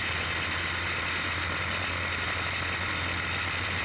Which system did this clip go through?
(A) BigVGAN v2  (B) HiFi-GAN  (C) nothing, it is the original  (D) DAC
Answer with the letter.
C